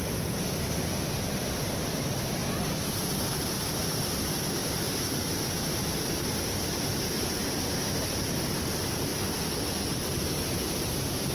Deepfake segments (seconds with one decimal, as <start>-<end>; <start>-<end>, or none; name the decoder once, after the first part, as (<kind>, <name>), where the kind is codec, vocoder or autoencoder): 0.0-2.4 (vocoder, BigVGAN v2); 3.2-9.1; 10.2-11.3